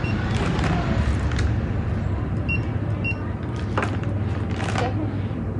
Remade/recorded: recorded